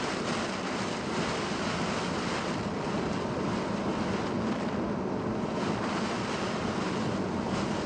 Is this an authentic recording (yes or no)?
yes